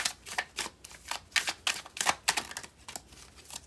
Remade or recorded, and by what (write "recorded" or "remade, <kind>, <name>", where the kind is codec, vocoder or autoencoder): recorded